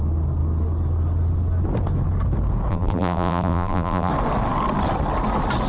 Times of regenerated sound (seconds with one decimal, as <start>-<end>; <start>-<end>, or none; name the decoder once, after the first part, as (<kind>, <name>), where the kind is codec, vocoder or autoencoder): 2.7-4.1 (vocoder, BigVGAN v2)